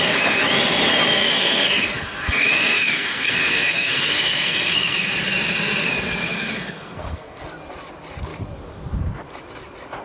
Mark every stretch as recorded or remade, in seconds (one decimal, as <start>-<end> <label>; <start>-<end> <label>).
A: 0.0-1.2 recorded; 1.2-5.1 remade; 5.1-6.2 recorded; 6.2-7.4 remade; 7.4-10.0 recorded